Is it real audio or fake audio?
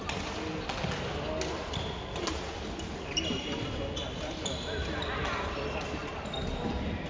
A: real